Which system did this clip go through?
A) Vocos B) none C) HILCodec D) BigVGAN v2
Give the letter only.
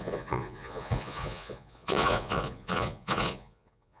A